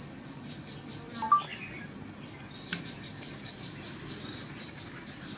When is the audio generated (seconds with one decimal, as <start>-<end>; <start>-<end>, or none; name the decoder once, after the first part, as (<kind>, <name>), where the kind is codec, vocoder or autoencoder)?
none